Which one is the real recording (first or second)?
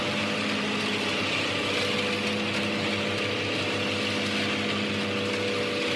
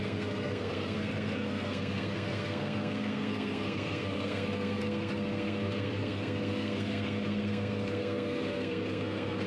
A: first